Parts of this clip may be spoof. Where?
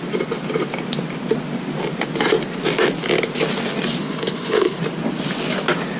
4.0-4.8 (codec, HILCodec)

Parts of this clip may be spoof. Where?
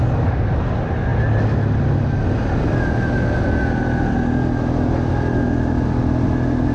none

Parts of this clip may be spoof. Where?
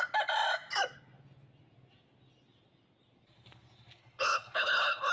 4.0-5.1 (codec, HILCodec)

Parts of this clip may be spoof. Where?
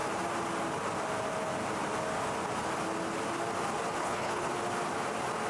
4.0-4.5 (codec, HILCodec)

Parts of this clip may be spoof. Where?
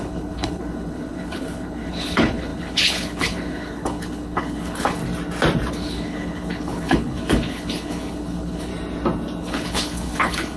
0.0-5.0 (codec, HILCodec); 5.7-8.7; 9.4-10.6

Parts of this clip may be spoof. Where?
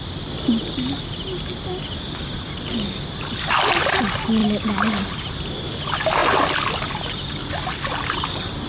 none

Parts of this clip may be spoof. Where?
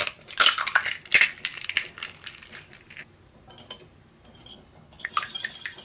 4.5-5.1 (codec, HILCodec)